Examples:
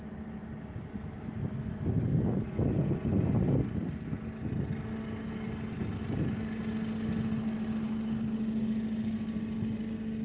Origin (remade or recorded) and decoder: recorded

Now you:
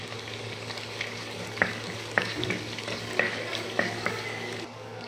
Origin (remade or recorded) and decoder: remade, codec, DAC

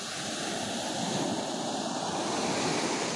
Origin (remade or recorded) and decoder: recorded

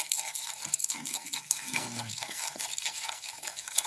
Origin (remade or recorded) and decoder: remade, codec, SNAC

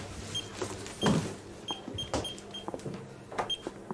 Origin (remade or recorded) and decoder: recorded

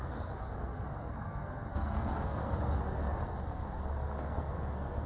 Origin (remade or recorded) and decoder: remade, codec, SNAC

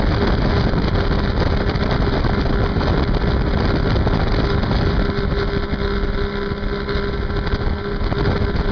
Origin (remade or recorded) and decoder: recorded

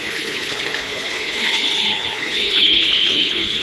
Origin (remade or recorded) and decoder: remade, codec, HILCodec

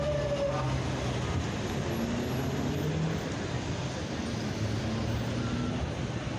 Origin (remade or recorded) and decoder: recorded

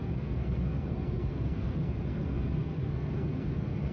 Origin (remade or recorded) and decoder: remade, codec, SNAC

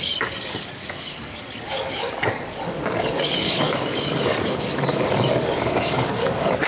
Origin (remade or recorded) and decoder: remade, codec, DAC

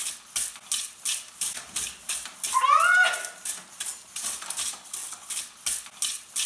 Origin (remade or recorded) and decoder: recorded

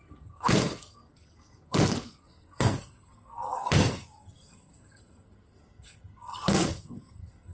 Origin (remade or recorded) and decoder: remade, codec, SNAC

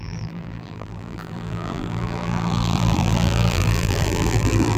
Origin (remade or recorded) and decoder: remade, vocoder, BigVGAN v2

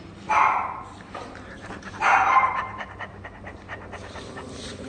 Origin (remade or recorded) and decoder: remade, vocoder, BigVGAN v2